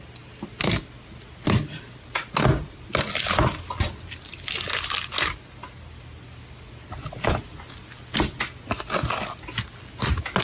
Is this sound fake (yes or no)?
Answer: no